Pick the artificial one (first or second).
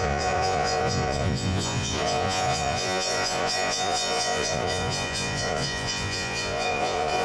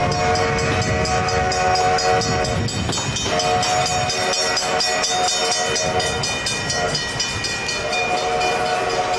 first